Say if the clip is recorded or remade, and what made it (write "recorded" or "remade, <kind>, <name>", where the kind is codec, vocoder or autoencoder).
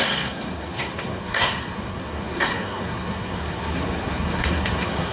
remade, codec, SNAC